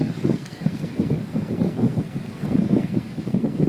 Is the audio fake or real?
fake